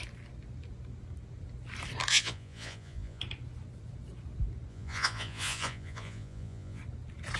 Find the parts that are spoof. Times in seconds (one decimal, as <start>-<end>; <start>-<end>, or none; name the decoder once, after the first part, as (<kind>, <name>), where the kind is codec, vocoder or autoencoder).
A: 2.1-3.2 (vocoder, Vocos); 4.7-6.8